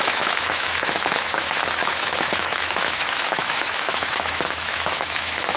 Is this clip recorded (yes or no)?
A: no